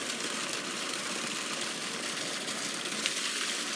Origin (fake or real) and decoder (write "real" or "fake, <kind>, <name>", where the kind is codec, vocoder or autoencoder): real